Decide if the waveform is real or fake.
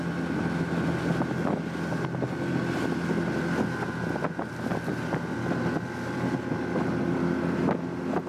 real